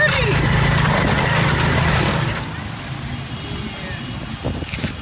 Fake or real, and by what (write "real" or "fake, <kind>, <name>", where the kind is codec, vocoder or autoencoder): real